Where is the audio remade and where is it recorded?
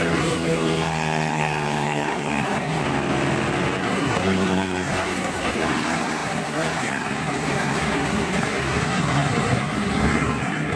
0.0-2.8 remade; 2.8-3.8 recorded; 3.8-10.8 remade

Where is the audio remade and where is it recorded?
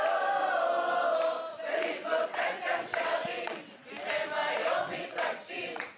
0.0-1.5 recorded; 1.5-3.9 remade; 3.9-4.6 recorded; 4.6-6.0 remade